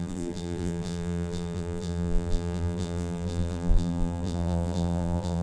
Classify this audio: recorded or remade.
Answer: remade